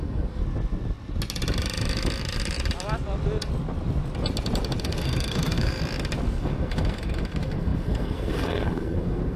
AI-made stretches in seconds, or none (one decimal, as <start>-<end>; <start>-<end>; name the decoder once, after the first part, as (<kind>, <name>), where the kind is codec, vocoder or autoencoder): 0.0-0.4 (codec, SNAC); 4.8-5.8; 6.3-9.4